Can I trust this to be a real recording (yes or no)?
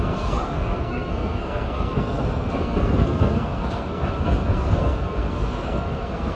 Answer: no